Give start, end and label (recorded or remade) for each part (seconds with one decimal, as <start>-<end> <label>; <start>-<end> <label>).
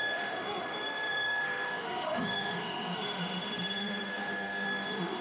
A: 0.0-5.2 remade